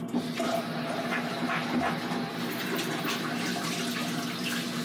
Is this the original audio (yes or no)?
yes